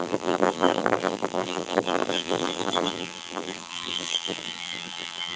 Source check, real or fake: fake